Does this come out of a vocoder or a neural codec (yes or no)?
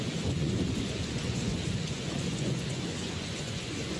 yes